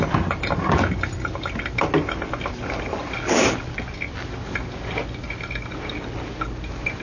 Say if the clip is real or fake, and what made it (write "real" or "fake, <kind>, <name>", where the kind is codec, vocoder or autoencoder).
real